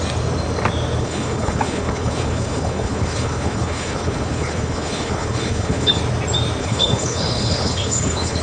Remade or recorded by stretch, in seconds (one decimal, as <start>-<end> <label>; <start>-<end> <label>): 0.0-1.0 recorded; 1.0-6.0 remade; 6.0-6.6 recorded; 6.6-8.4 remade